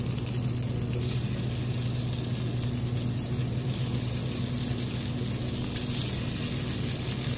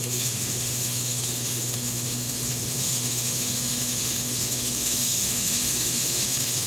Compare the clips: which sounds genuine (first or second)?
first